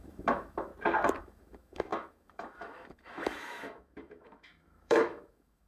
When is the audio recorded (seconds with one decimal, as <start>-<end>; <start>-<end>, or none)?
0.7-1.2